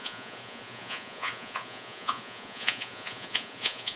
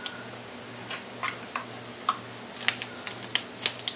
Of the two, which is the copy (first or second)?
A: first